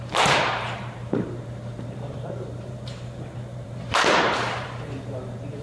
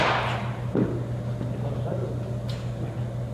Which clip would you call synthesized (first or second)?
first